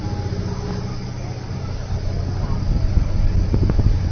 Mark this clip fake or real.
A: real